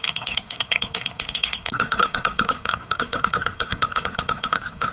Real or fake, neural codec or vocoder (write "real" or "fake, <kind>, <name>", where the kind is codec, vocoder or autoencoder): fake, codec, SNAC